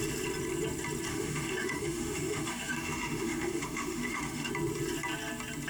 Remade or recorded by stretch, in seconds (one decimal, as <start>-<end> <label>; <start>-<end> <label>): 0.0-1.1 recorded; 1.1-4.5 remade; 4.5-5.7 recorded